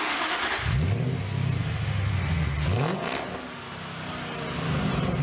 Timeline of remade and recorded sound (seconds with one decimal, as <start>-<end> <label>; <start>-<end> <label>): 0.0-0.4 remade; 0.4-1.6 recorded; 1.6-2.1 remade; 2.1-5.2 recorded